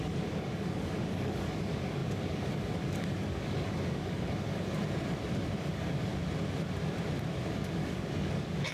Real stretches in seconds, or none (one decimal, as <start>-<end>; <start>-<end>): 4.8-5.6; 6.1-7.5